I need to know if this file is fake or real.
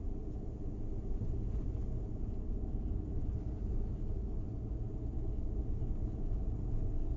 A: real